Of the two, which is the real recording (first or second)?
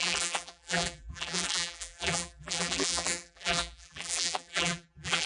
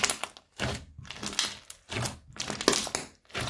second